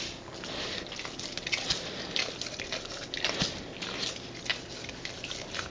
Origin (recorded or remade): recorded